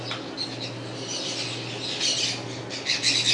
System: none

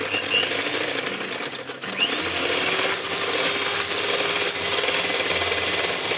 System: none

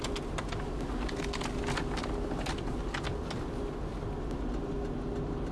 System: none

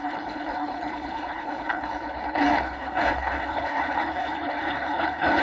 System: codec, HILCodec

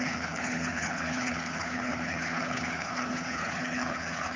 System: codec, HILCodec